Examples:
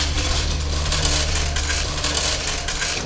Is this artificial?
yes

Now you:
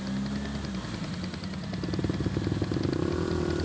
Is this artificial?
no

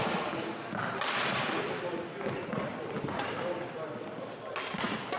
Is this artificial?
no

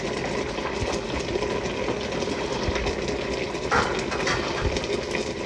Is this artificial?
no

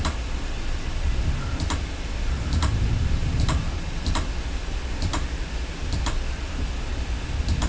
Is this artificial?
yes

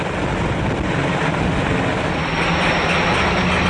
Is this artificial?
no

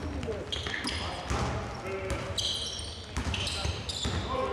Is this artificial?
no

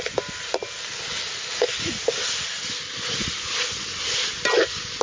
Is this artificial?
no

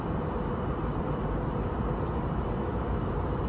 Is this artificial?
no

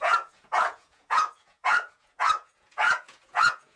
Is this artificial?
yes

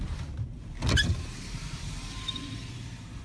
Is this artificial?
no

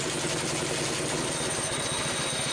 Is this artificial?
no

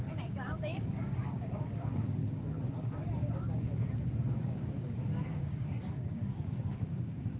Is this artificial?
yes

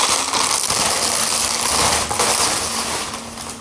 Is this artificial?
no